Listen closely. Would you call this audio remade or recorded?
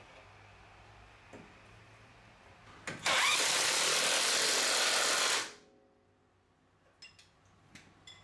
recorded